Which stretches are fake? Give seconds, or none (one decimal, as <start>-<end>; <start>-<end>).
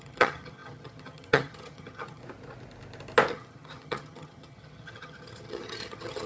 0.0-2.2; 3.3-6.3